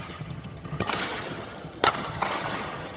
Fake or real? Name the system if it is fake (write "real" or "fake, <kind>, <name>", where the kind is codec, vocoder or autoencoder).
fake, vocoder, HiFi-GAN